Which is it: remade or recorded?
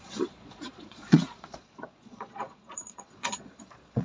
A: remade